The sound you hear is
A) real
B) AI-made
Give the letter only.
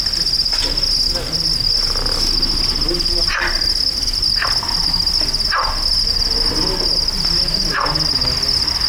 A